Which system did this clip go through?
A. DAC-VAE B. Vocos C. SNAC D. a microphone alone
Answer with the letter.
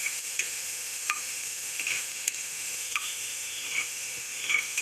A